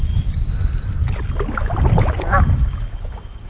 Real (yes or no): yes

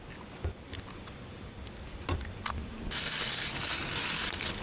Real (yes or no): yes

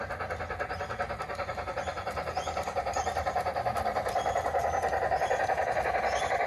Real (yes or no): yes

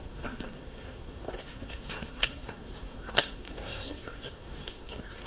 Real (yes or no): no